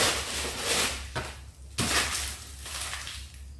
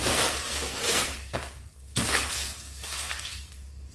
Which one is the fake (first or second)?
second